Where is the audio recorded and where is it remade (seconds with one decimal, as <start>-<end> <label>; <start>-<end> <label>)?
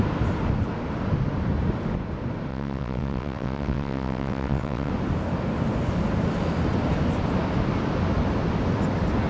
0.0-2.5 recorded; 2.5-4.9 remade; 4.9-9.3 recorded